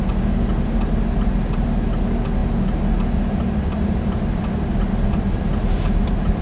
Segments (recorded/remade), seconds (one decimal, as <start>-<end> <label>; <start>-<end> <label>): 0.0-6.4 recorded